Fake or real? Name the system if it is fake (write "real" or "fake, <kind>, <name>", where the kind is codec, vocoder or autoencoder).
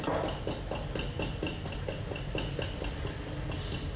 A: real